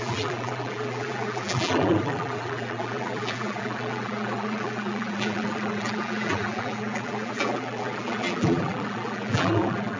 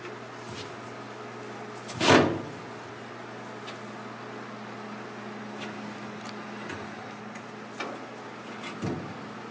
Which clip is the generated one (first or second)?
first